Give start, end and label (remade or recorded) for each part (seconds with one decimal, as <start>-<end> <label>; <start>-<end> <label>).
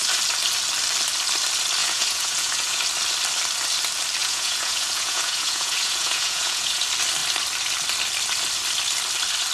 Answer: 0.0-1.8 recorded; 1.8-2.8 remade; 2.8-4.2 recorded; 4.2-6.8 remade; 6.8-9.5 recorded